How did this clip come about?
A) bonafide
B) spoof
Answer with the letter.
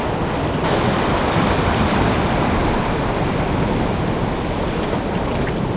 A